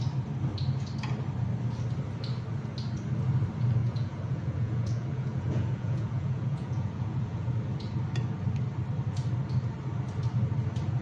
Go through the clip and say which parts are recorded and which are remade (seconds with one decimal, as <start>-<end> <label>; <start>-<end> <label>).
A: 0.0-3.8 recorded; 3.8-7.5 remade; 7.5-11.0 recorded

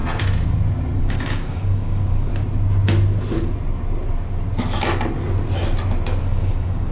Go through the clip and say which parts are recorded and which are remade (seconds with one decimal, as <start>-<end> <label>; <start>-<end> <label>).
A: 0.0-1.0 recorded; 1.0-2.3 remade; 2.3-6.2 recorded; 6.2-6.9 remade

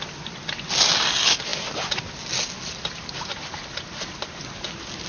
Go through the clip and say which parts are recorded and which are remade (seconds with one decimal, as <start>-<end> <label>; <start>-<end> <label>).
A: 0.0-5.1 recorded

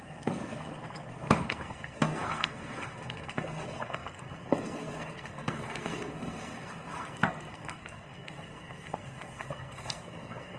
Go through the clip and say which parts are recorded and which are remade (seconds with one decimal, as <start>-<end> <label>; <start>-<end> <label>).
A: 0.0-10.6 remade

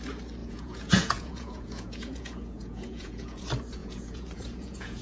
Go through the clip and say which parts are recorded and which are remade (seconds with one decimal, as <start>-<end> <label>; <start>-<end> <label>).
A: 0.0-0.4 recorded; 0.4-3.4 remade; 3.4-3.8 recorded; 3.8-5.0 remade